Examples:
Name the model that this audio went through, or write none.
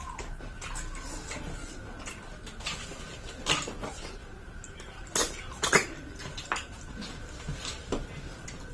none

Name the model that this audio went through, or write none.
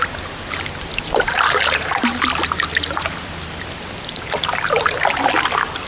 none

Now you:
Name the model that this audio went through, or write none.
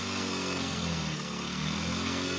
codec, SNAC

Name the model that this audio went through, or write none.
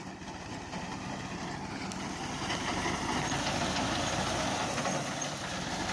none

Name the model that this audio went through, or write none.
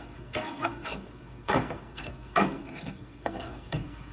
codec, SNAC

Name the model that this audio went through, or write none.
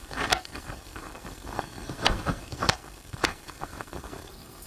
codec, SNAC